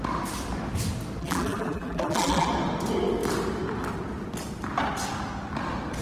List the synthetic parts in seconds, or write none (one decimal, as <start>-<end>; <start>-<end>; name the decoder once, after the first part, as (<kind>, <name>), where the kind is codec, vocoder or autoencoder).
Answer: 1.2-2.5 (vocoder, BigVGAN v2)